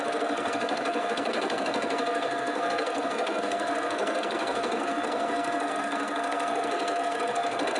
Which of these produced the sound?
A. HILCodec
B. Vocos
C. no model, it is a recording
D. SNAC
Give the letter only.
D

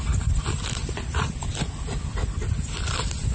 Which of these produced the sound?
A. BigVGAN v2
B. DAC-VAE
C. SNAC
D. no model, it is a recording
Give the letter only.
D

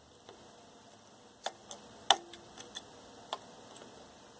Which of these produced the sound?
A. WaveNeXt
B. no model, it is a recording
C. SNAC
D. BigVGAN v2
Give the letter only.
B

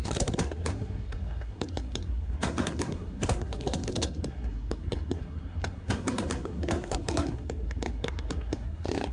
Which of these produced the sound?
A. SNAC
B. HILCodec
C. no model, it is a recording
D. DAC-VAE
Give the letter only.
A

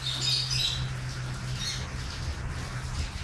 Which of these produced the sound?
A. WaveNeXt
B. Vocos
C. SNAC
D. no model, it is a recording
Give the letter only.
D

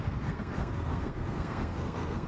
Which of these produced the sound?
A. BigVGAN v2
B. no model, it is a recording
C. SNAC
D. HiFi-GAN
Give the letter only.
C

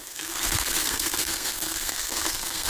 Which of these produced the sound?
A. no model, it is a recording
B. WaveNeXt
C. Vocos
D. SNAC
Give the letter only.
D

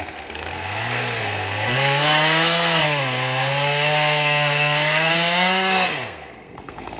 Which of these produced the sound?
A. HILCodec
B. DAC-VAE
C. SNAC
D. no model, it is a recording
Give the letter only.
C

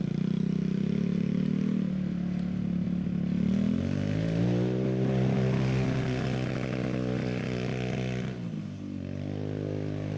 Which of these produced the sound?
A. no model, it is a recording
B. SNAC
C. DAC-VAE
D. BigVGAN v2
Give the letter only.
A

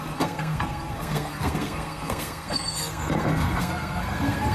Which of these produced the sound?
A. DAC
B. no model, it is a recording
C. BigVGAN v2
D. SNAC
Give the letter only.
D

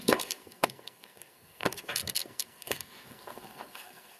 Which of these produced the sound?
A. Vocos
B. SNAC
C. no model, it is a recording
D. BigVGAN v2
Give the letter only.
B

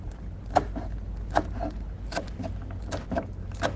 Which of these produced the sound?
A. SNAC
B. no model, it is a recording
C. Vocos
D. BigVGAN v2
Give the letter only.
B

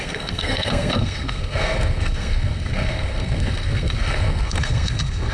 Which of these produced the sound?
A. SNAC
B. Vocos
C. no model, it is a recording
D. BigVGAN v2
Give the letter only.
A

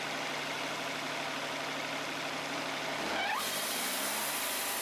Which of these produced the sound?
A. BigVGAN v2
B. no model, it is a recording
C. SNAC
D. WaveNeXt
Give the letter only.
B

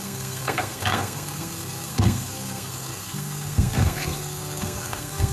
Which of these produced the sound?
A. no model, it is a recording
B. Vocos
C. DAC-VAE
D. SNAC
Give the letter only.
D